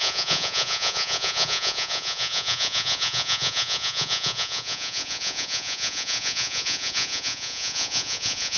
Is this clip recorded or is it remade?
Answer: remade